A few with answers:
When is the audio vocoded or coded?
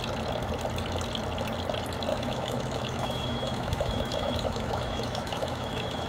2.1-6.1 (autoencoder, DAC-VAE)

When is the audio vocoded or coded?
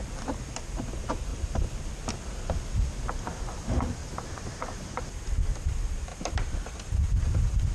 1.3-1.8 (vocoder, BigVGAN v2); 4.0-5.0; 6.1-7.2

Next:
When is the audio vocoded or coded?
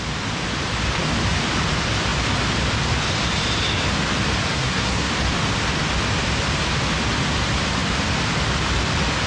4.5-5.1 (codec, SNAC)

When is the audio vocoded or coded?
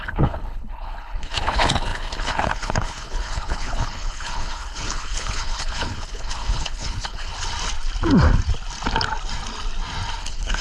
0.0-7.3 (codec, HILCodec); 10.2-10.6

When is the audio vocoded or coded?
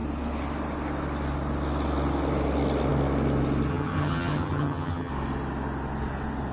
3.7-5.1 (vocoder, HiFi-GAN)